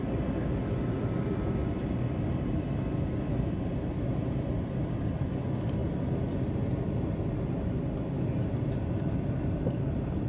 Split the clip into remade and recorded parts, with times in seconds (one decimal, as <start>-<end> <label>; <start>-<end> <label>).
0.0-10.3 recorded